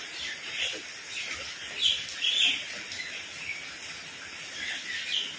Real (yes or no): yes